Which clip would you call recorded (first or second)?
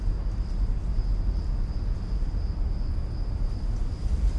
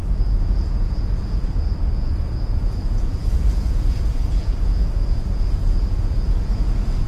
first